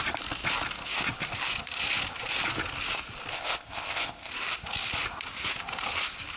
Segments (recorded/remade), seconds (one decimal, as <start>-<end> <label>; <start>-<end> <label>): 0.0-3.3 recorded; 3.3-4.3 remade; 4.3-6.4 recorded